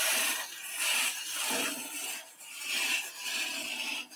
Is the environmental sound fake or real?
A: fake